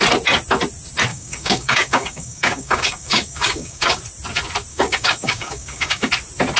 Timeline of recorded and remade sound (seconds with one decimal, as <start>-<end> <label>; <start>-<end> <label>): 0.0-1.1 recorded; 1.1-4.0 remade; 4.0-4.7 recorded; 4.7-6.1 remade; 6.1-6.6 recorded